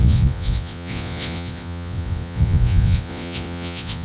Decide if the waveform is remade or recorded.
remade